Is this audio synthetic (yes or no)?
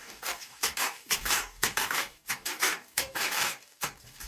yes